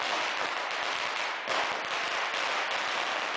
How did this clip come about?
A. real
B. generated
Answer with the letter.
A